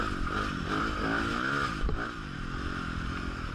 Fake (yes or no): no